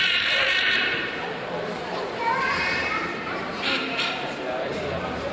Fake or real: fake